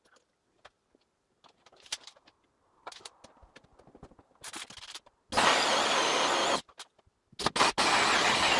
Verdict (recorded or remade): recorded